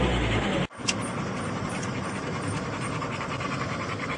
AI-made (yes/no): no